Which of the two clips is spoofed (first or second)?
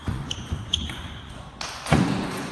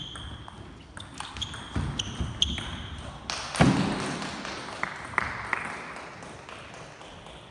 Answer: first